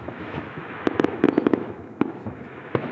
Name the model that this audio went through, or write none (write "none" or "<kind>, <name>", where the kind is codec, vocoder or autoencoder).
autoencoder, DAC-VAE